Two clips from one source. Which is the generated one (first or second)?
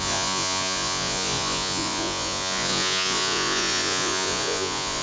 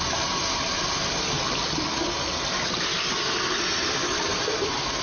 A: first